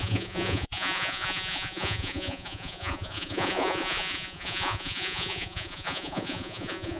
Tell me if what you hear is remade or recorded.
remade